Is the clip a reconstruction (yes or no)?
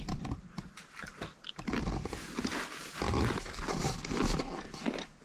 no